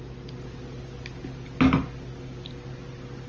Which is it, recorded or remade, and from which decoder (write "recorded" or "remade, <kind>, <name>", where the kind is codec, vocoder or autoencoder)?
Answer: recorded